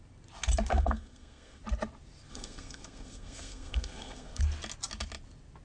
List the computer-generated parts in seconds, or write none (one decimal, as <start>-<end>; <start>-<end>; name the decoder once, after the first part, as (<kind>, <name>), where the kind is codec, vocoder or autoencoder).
0.7-1.6 (codec, SNAC); 2.3-4.4